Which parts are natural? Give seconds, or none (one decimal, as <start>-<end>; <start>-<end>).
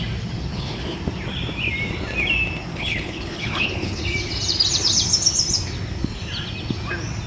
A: 0.0-0.5; 1.0-2.7; 4.0-7.3